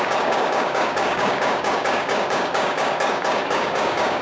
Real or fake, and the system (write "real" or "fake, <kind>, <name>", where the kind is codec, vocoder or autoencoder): fake, codec, DAC